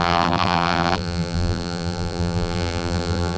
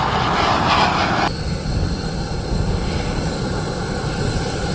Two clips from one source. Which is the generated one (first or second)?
first